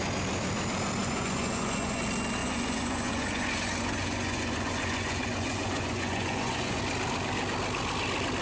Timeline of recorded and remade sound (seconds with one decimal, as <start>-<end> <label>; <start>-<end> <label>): 0.0-1.0 recorded; 1.0-2.0 remade; 2.0-2.4 recorded; 2.4-6.8 remade; 6.8-8.4 recorded